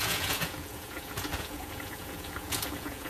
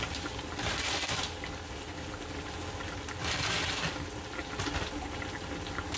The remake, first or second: first